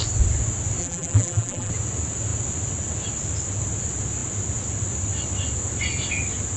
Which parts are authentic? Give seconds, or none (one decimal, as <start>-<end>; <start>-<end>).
0.0-0.8; 1.7-6.6